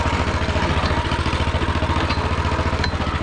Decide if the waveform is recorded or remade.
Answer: recorded